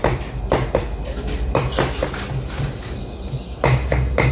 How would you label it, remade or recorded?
recorded